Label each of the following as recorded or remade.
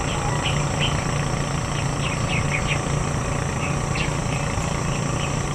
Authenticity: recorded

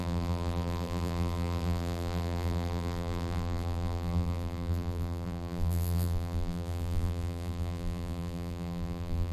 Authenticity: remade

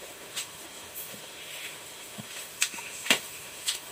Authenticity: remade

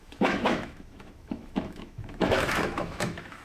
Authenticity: remade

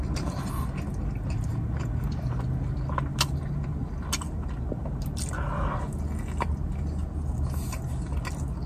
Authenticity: recorded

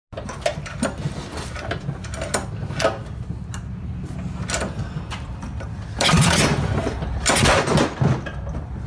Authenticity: recorded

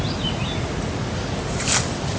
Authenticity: recorded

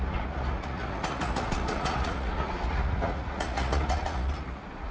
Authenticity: remade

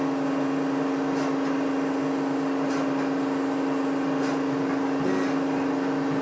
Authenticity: recorded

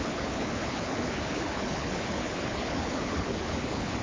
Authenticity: remade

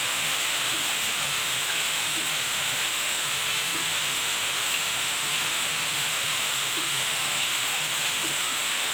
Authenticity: remade